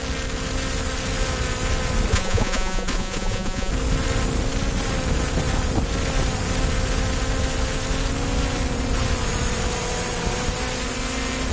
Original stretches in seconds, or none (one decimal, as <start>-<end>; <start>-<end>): 0.0-2.1; 3.7-11.5